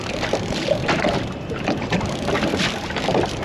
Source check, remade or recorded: recorded